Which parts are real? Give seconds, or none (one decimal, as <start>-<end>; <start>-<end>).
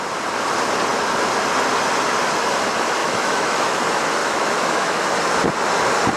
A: 0.0-3.0; 3.8-4.2; 5.0-6.2